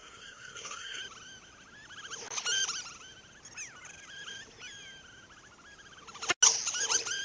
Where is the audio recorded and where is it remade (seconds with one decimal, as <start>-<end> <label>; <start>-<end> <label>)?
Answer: 0.0-1.0 remade; 1.0-7.2 recorded